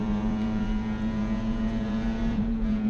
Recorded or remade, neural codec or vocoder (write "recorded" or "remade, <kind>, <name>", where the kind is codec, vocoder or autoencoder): remade, vocoder, Vocos